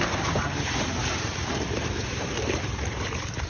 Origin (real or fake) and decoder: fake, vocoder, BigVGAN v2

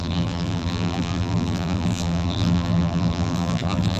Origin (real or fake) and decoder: fake, vocoder, BigVGAN v2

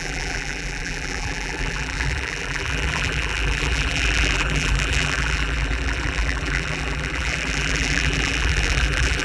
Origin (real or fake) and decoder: fake, vocoder, BigVGAN v2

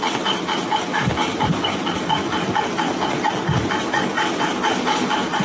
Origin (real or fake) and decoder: fake, vocoder, BigVGAN v2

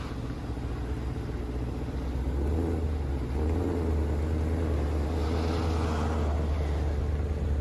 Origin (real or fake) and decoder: real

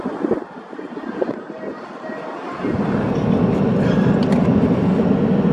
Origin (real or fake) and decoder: real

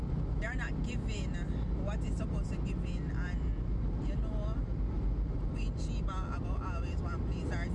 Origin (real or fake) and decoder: real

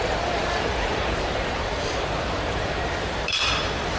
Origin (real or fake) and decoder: fake, vocoder, BigVGAN v2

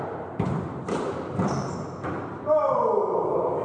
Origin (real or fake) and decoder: fake, vocoder, BigVGAN v2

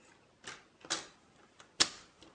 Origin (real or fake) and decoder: real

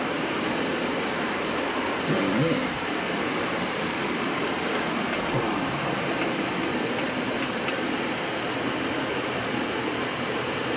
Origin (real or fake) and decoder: fake, vocoder, BigVGAN v2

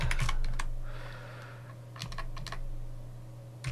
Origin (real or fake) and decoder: real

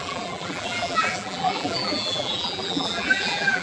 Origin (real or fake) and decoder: fake, vocoder, BigVGAN v2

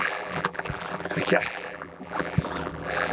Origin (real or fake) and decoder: fake, vocoder, BigVGAN v2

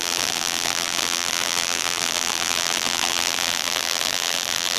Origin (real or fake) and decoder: fake, vocoder, BigVGAN v2